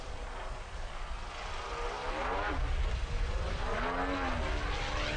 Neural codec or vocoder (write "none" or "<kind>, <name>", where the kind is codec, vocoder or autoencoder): none